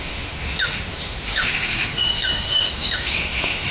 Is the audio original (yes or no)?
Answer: no